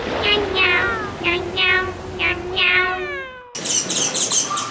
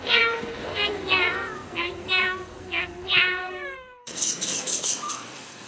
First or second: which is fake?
second